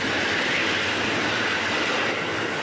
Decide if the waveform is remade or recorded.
recorded